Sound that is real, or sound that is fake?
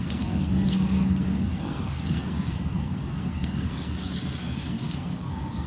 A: fake